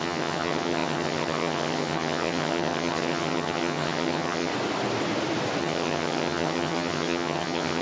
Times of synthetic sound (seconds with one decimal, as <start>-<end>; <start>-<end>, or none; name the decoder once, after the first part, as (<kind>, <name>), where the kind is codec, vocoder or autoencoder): 0.0-4.5 (vocoder, HiFi-GAN); 5.6-7.8